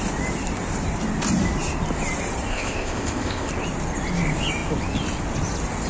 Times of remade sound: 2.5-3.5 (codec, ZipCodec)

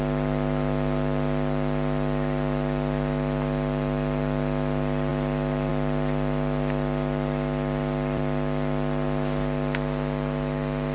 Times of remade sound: none

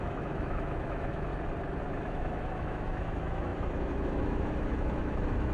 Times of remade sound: 0.0-1.3 (autoencoder, DAC-VAE); 1.8-5.5

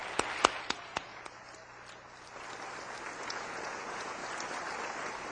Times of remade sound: 0.7-1.1 (vocoder, Vocos); 3.2-4.2